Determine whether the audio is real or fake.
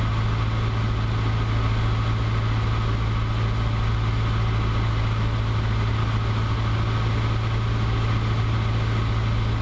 real